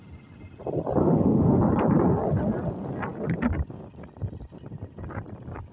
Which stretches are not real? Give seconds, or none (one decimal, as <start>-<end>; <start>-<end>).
1.0-1.6